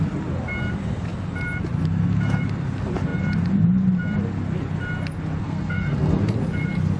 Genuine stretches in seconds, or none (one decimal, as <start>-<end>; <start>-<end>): 0.0-5.4; 6.2-7.0